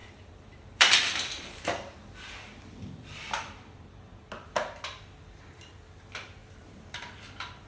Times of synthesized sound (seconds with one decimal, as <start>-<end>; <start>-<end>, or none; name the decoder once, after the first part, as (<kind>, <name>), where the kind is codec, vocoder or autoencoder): 0.0-4.3 (vocoder, BigVGAN v2); 6.4-7.0